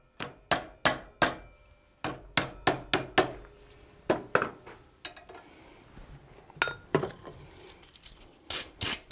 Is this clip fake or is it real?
real